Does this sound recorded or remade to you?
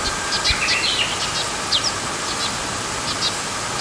recorded